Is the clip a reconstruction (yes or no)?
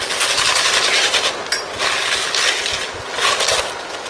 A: no